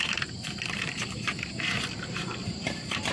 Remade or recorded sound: remade